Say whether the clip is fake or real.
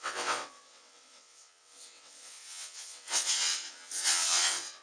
fake